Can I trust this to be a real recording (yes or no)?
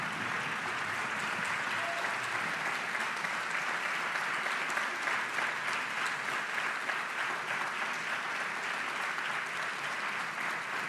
yes